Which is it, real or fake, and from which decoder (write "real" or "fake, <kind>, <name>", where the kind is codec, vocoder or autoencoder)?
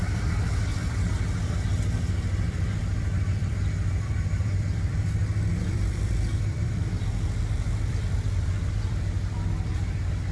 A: fake, vocoder, BigVGAN v2